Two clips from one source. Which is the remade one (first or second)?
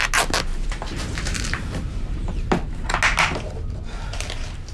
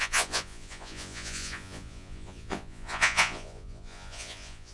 second